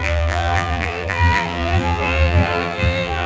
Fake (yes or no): yes